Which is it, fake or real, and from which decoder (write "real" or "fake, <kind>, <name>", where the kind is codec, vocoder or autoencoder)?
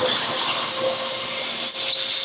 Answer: real